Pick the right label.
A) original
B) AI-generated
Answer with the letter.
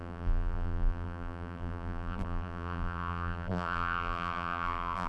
B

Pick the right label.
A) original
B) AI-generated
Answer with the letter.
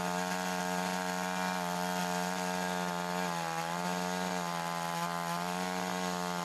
A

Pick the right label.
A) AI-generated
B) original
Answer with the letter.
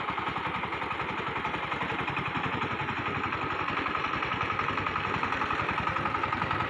A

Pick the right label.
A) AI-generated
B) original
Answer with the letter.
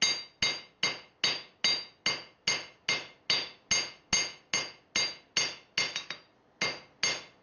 B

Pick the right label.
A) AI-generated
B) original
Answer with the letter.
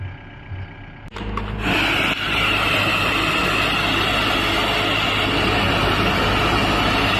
B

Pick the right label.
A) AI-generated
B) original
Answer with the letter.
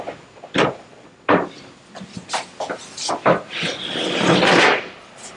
B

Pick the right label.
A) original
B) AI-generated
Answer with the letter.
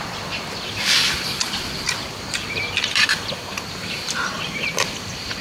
B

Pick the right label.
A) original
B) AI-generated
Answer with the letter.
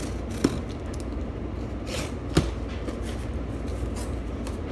A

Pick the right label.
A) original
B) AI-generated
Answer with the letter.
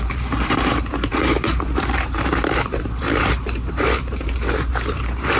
B